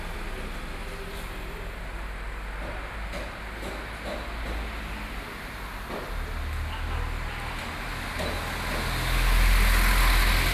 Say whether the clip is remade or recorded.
recorded